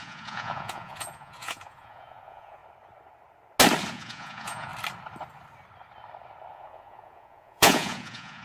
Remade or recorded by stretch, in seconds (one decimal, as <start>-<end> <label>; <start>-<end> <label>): 0.0-2.6 remade; 2.6-3.9 recorded; 3.9-4.7 remade; 4.7-6.5 recorded; 6.5-8.4 remade